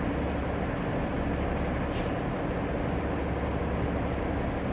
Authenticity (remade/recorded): recorded